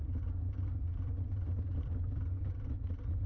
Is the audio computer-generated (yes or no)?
no